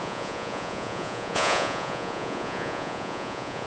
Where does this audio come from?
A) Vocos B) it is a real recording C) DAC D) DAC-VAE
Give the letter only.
A